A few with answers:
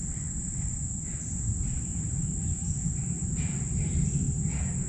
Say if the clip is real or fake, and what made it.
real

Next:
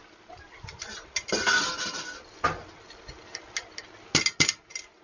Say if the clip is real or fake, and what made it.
real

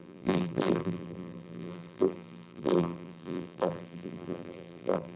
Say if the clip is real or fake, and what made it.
fake, vocoder, BigVGAN v2